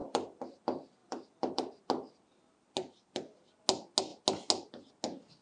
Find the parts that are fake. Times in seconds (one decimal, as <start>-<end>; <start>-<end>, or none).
0.0-0.6; 1.0-1.8; 2.8-3.6